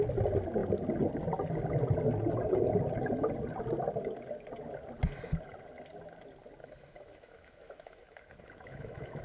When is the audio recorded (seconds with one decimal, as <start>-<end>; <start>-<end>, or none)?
0.0-6.6